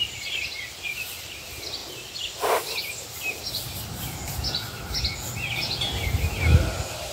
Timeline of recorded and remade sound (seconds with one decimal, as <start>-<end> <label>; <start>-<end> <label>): 0.0-7.1 recorded